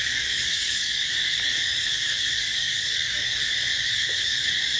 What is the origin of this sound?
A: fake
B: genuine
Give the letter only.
A